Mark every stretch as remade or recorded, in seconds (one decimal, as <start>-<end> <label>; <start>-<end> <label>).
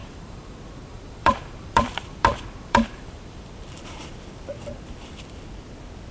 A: 0.0-3.7 remade; 3.7-6.1 recorded